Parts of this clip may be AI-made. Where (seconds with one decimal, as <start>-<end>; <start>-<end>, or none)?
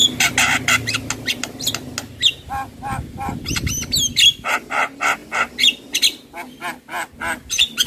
none